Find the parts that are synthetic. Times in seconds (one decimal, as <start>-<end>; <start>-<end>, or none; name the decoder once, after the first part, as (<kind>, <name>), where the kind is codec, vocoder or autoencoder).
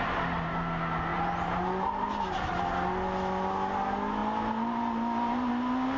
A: 1.1-2.7 (vocoder, BigVGAN v2)